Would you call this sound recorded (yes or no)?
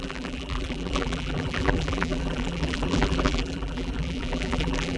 no